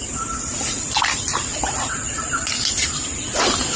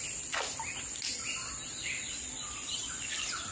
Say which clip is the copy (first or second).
first